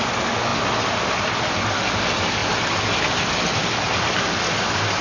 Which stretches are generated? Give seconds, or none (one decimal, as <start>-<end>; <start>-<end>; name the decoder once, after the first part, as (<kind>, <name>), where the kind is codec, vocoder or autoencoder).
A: none

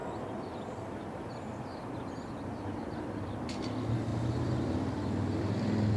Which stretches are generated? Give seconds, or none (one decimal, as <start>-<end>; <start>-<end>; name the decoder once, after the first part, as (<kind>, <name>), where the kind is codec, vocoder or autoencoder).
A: 4.1-5.5 (vocoder, BigVGAN v2)

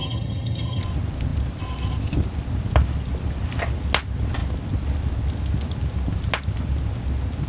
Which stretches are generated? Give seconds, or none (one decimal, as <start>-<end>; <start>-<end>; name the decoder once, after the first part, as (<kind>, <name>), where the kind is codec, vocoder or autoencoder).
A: 0.0-0.8 (vocoder, HiFi-GAN)

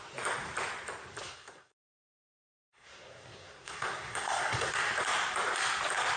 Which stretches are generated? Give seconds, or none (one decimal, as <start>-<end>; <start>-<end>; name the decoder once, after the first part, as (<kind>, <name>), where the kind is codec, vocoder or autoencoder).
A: 1.2-4.9 (codec, SNAC)

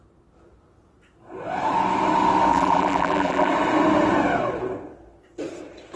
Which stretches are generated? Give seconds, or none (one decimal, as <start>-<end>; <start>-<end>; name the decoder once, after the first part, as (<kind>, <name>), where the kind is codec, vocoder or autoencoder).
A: 2.5-3.5 (vocoder, BigVGAN v2)

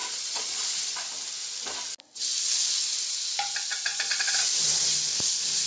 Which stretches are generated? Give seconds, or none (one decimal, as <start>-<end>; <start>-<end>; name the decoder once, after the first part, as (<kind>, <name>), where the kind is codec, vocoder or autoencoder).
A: 0.0-1.0 (vocoder, Vocos); 3.9-4.5

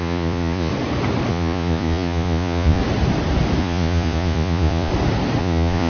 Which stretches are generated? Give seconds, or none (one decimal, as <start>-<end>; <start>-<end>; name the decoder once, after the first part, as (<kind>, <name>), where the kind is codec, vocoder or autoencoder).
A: 0.0-0.7 (vocoder, Vocos); 1.3-2.8; 3.6-4.9; 5.4-5.9

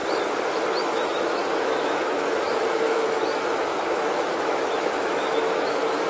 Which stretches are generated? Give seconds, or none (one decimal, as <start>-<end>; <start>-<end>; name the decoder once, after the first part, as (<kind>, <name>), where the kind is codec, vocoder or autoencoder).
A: 0.8-6.1 (autoencoder, DAC-VAE)